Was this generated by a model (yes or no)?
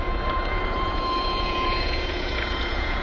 yes